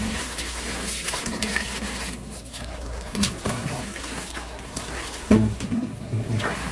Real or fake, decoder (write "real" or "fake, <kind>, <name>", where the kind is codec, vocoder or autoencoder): fake, codec, SNAC